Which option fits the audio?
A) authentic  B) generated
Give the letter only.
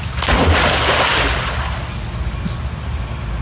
A